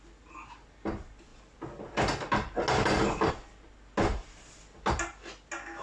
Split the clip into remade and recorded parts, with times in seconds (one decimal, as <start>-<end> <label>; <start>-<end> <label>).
0.0-5.8 recorded